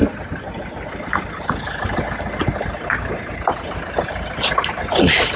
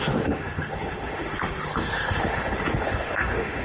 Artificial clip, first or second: second